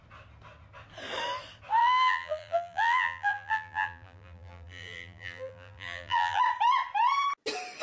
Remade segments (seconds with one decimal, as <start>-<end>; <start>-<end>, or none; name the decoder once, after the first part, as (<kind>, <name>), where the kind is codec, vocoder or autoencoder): 1.8-6.4 (vocoder, BigVGAN v2)

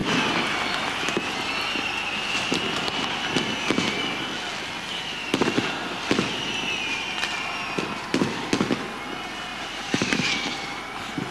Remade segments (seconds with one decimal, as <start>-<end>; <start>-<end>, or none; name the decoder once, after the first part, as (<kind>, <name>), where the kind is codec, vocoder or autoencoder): 9.5-10.3 (vocoder, BigVGAN v2)

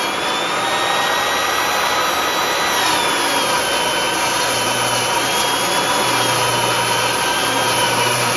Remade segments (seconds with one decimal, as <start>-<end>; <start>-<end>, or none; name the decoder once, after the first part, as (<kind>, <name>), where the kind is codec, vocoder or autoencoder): 7.4-8.4 (vocoder, BigVGAN v2)

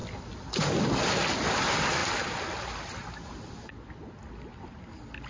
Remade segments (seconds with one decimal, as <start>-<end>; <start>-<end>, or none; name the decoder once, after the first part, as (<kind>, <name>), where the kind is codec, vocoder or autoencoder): none

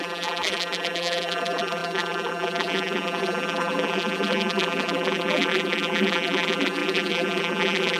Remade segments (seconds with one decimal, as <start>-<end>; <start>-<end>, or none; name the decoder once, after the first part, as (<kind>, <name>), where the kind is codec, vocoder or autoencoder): 0.0-8.0 (vocoder, BigVGAN v2)

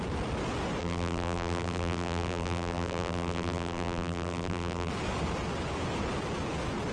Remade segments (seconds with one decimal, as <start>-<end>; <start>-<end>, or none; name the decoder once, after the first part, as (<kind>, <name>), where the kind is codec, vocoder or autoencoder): 0.8-4.9 (vocoder, BigVGAN v2)